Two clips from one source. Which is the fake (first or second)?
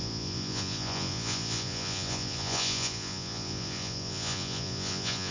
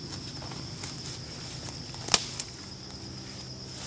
first